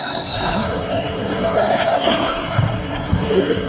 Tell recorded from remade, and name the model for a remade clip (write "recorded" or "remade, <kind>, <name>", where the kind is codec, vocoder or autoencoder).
remade, codec, SNAC